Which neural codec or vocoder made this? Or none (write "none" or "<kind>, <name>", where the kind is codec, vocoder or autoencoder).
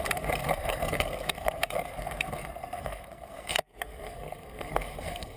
codec, SNAC